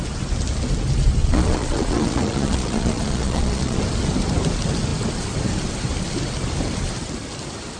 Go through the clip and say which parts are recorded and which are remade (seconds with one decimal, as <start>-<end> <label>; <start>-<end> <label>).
0.0-1.2 recorded; 1.2-3.8 remade; 3.8-7.8 recorded